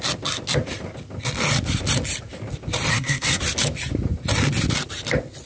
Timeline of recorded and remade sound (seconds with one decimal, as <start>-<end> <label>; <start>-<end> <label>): 0.0-2.9 recorded; 2.9-3.4 remade; 3.4-5.5 recorded